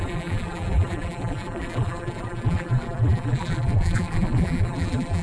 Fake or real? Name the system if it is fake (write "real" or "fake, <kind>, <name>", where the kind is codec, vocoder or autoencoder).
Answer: fake, vocoder, BigVGAN v2